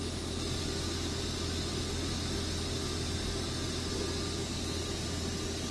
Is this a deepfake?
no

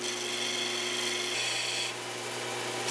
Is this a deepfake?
no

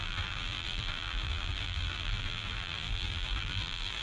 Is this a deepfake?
yes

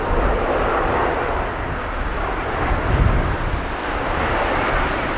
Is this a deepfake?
no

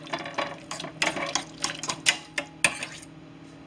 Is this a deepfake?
no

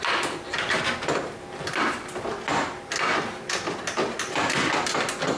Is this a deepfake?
no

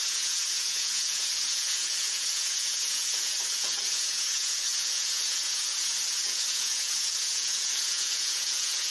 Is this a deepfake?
yes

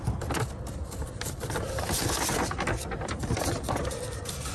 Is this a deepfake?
no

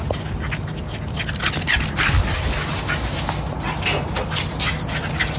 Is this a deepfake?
no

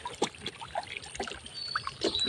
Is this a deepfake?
no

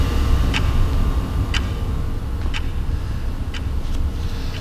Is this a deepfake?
no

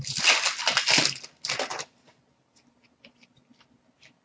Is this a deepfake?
no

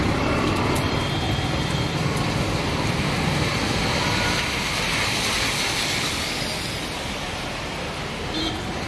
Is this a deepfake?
yes